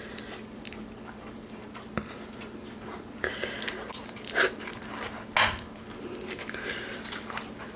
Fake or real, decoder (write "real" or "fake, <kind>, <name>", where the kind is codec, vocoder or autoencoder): real